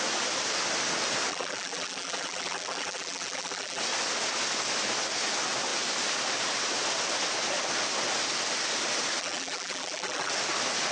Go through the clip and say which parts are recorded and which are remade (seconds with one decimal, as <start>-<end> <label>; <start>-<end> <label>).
0.0-1.3 recorded; 1.3-3.8 remade; 3.8-9.2 recorded; 9.2-10.3 remade; 10.3-10.9 recorded